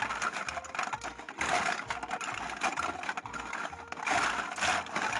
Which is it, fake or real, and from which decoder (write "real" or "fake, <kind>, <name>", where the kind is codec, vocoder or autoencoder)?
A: real